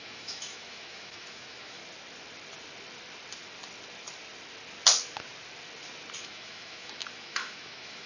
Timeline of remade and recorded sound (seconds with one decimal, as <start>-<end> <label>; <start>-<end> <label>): 0.0-1.8 remade; 1.8-6.2 recorded; 6.2-8.1 remade